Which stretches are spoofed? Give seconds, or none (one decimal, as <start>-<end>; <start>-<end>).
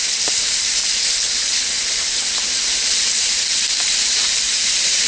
0.0-0.8; 2.0-5.1